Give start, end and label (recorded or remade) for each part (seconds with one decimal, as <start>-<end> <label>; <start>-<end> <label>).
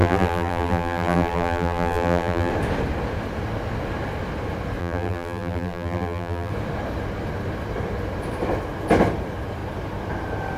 0.0-2.5 remade; 2.5-4.8 recorded; 4.8-6.5 remade; 6.5-10.6 recorded